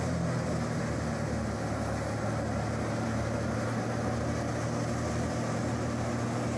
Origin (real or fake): real